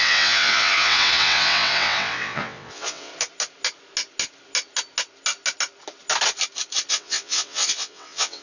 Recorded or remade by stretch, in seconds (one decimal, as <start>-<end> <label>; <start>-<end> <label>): 0.0-3.1 remade; 3.1-6.9 recorded; 6.9-8.4 remade